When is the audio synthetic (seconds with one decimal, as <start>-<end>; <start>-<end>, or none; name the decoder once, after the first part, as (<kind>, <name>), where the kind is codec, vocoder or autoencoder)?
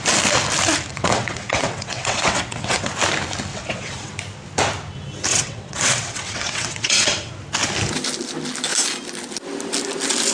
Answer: 0.9-2.9 (vocoder, WaveNeXt); 3.5-4.1; 5.3-7.3